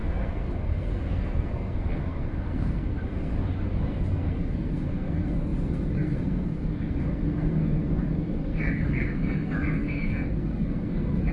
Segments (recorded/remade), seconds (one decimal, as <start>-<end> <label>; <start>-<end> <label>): 0.0-3.3 remade; 3.3-3.8 recorded; 3.8-11.3 remade